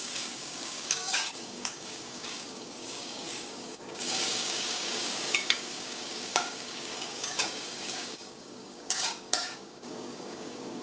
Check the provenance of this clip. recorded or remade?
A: remade